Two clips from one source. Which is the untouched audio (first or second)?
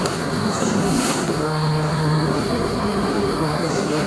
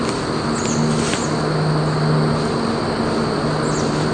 second